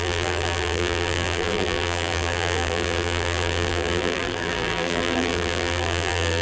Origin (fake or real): fake